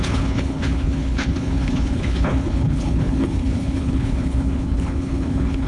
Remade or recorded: remade